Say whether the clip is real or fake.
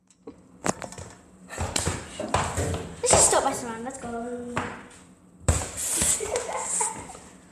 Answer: fake